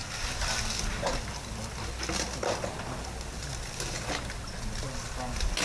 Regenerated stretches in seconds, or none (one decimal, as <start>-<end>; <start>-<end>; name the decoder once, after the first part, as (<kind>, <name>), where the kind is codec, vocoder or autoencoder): none